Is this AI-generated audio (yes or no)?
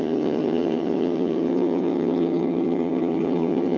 yes